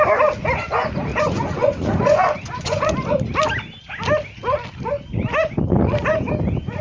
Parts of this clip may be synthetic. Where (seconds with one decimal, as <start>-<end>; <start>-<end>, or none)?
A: 1.1-2.9